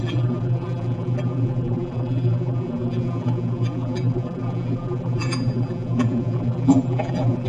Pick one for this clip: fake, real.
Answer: fake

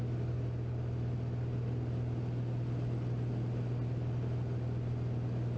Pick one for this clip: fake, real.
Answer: real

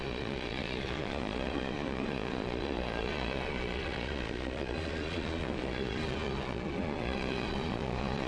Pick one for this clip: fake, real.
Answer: fake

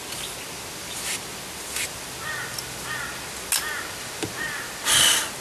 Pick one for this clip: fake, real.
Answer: real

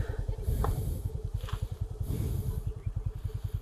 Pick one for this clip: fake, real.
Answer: fake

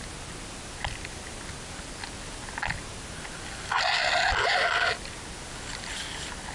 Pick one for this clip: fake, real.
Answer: real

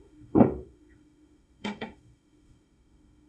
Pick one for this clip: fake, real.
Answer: fake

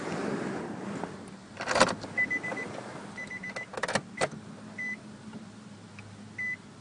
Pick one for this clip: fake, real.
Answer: real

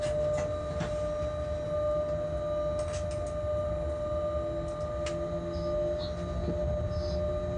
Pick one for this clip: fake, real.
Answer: real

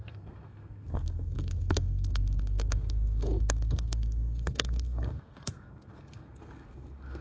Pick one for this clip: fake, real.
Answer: fake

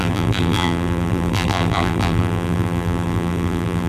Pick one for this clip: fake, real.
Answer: fake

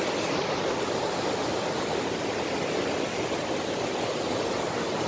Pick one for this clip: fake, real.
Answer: real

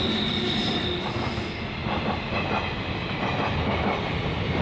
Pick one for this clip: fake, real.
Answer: real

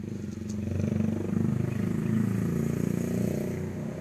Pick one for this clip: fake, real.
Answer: real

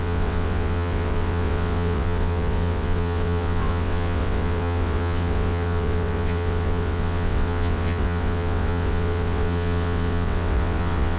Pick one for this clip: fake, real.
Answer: fake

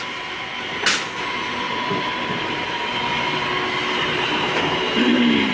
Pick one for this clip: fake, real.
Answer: real